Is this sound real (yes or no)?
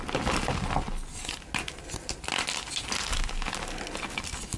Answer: yes